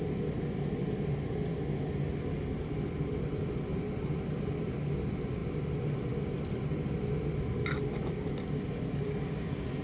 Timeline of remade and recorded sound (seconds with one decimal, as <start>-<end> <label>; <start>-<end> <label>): 0.0-9.8 recorded

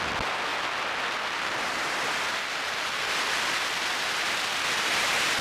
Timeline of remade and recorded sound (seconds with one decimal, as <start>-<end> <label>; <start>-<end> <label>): 0.0-5.4 recorded

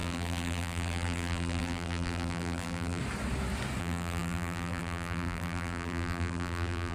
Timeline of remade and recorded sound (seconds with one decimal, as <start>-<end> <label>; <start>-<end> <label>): 0.0-3.0 remade; 3.0-3.8 recorded; 3.8-6.9 remade